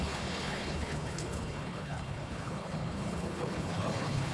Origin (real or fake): fake